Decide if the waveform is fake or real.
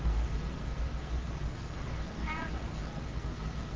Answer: fake